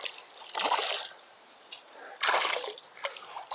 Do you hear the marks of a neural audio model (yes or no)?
yes